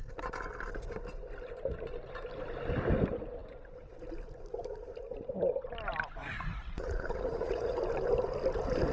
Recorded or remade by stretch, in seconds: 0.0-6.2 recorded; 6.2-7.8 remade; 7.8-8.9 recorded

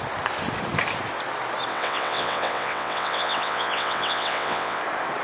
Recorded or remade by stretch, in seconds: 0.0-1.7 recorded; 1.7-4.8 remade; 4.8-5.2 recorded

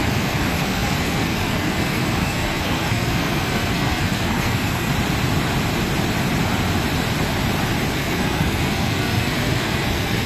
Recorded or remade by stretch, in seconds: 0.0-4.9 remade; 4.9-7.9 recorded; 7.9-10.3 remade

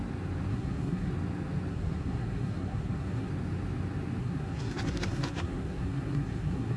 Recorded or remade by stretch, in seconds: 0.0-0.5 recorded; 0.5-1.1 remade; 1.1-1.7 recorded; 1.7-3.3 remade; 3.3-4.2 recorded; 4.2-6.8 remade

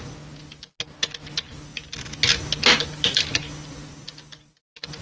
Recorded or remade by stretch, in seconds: 0.0-5.0 recorded

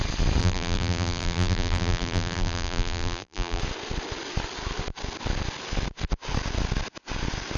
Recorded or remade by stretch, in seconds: 0.0-0.4 recorded; 0.4-3.6 remade; 3.6-7.6 recorded

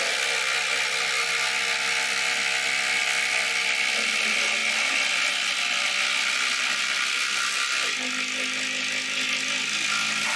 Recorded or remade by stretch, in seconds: 0.0-3.0 recorded; 3.0-3.9 remade; 3.9-10.4 recorded